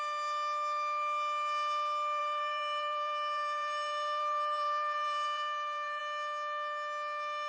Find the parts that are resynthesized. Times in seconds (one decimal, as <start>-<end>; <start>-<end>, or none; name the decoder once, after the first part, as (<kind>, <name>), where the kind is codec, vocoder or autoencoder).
2.2-6.0 (vocoder, BigVGAN v2)

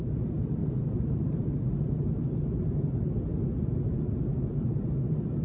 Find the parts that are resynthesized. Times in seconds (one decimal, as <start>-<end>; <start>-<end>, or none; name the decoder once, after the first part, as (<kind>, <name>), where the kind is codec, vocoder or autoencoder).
0.0-3.3 (vocoder, BigVGAN v2); 4.5-5.4

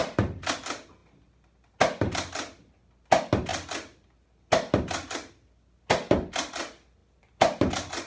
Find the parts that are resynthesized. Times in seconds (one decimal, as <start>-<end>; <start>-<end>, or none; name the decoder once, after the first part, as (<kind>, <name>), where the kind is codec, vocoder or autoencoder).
7.0-8.1 (vocoder, BigVGAN v2)

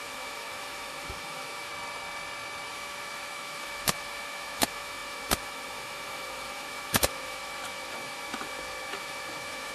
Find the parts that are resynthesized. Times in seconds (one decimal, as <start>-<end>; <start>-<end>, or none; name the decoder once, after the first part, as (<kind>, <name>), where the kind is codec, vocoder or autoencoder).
0.0-1.7 (autoencoder, DAC-VAE); 2.7-9.7

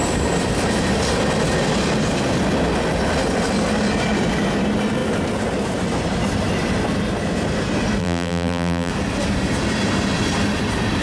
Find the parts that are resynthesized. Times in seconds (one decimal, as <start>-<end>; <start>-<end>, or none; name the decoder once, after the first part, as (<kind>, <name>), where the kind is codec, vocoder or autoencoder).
8.0-8.9 (vocoder, BigVGAN v2)